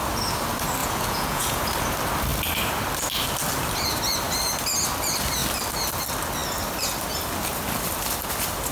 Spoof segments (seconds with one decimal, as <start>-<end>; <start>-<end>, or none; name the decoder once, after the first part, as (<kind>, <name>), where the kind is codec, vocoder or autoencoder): 0.8-1.6 (vocoder, Vocos)